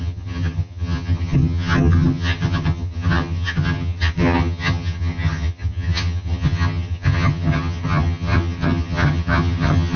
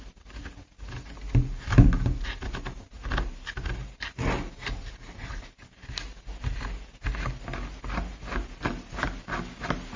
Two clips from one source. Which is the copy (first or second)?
first